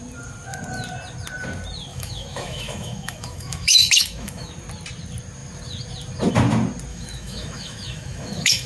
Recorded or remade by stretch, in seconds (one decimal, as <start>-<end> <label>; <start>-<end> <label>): 0.0-1.9 recorded; 1.9-4.5 remade; 4.5-6.9 recorded; 6.9-8.7 remade